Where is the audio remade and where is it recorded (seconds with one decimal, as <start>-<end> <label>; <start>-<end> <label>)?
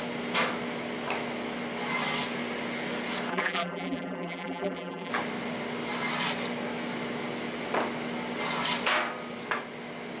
0.0-3.3 recorded; 3.3-5.1 remade; 5.1-10.2 recorded